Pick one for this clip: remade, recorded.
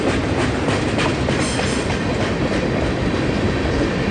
recorded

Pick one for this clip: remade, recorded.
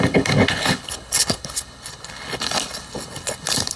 remade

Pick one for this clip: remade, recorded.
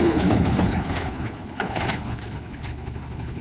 remade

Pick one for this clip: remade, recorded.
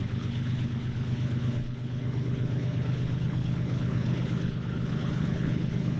remade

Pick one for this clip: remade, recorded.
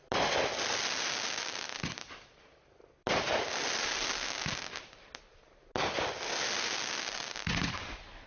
recorded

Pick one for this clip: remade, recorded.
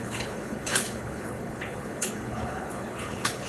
remade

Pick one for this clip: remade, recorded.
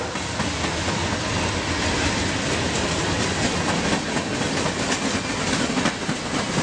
recorded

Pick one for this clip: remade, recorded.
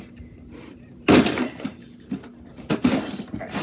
recorded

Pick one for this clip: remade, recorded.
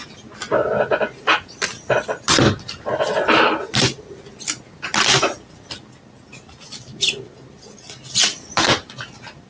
recorded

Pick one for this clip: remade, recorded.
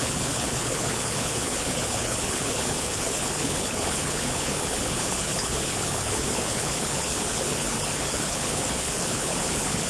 remade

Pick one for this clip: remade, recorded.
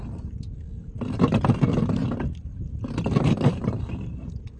recorded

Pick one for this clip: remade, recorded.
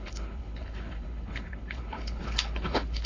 remade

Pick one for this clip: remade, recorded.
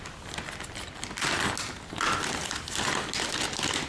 recorded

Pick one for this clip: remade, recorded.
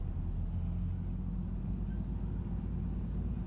recorded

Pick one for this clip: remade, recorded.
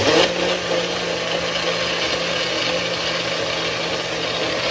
recorded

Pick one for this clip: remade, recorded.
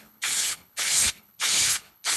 remade